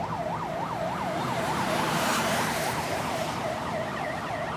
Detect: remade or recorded remade